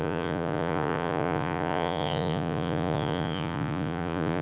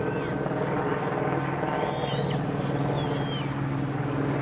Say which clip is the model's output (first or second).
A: first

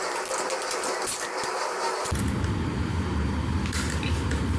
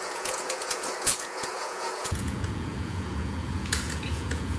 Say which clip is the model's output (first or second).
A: second